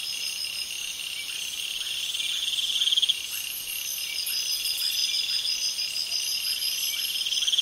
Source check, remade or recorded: recorded